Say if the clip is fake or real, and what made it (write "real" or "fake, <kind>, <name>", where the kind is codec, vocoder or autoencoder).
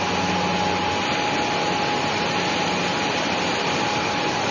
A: real